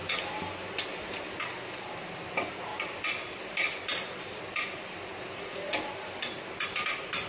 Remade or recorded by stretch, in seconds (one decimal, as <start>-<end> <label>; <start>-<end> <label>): 0.0-7.3 recorded